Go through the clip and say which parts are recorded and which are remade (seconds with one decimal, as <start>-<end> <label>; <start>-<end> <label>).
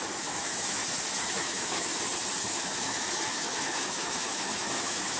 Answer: 0.0-0.8 remade; 0.8-1.3 recorded; 1.3-1.9 remade; 1.9-2.4 recorded; 2.4-5.2 remade